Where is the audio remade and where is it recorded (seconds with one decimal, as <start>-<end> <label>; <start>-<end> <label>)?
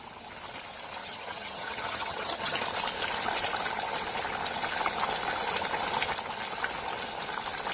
0.0-1.0 recorded; 1.0-2.6 remade; 2.6-7.7 recorded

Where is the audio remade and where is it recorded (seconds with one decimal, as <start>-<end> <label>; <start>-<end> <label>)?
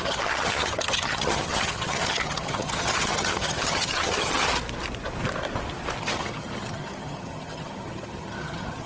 0.0-4.5 remade; 4.5-6.0 recorded; 6.0-8.9 remade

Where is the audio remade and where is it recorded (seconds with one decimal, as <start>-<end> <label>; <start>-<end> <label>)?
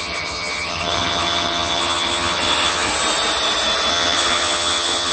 0.0-2.9 remade; 2.9-3.9 recorded; 3.9-5.1 remade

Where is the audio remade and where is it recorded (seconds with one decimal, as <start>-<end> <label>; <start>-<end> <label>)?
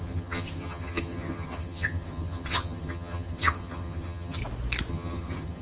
0.0-4.4 remade; 4.4-4.9 recorded; 4.9-5.6 remade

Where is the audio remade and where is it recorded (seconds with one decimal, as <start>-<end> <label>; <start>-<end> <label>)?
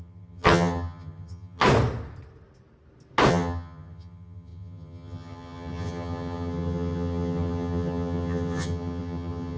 0.0-1.6 remade; 1.6-3.3 recorded; 3.3-9.6 remade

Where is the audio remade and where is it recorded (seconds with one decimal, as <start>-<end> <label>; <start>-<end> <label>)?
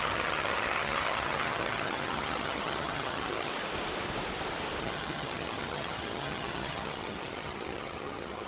0.0-3.5 remade; 3.5-4.8 recorded; 4.8-8.5 remade